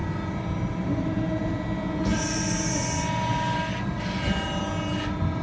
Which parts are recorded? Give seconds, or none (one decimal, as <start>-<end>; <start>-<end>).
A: 0.0-5.4